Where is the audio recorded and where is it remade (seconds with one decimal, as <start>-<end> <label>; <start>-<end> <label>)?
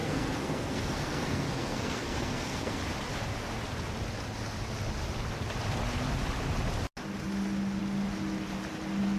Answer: 0.0-2.8 remade; 2.8-9.2 recorded